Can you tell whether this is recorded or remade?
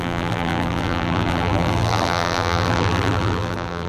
remade